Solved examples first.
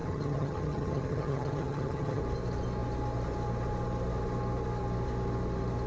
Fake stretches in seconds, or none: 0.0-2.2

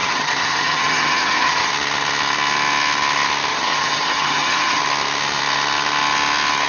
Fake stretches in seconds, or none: 0.0-1.7; 3.5-4.8

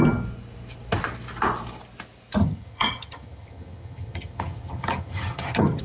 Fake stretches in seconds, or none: 2.4-5.8

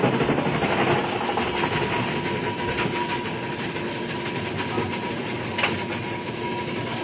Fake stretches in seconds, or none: none

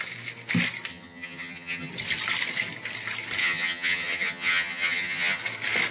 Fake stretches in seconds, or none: 0.9-1.9; 3.4-5.4

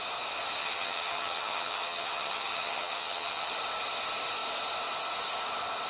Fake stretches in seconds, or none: 0.6-3.5

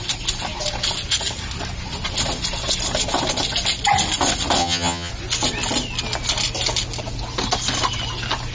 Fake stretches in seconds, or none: 4.6-5.1

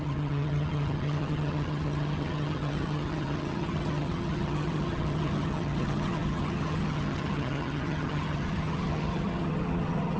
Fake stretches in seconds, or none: 0.0-10.2